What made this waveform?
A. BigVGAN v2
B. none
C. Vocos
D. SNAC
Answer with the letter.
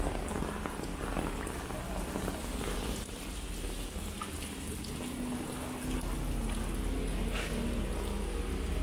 B